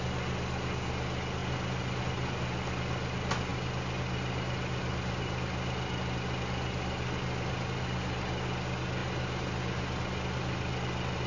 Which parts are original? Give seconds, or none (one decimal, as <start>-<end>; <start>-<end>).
0.0-11.3

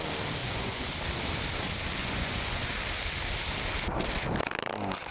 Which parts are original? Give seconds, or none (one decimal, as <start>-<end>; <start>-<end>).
0.0-0.4; 0.9-2.0; 2.7-5.1

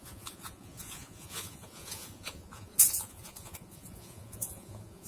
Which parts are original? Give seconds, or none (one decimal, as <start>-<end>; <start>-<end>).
none

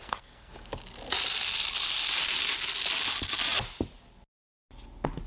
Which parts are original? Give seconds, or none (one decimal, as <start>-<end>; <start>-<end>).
0.5-5.3

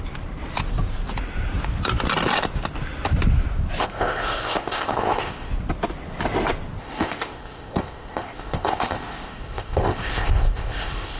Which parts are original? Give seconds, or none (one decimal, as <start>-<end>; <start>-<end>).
0.0-3.8; 5.5-6.8

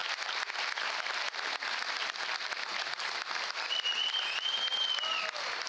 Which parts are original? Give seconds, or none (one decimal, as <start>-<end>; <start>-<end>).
0.0-5.7